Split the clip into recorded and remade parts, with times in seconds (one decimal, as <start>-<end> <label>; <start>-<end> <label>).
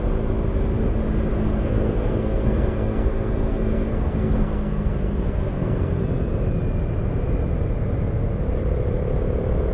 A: 0.0-1.3 recorded; 1.3-6.0 remade; 6.0-9.7 recorded